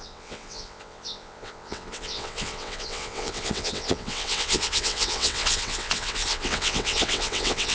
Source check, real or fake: fake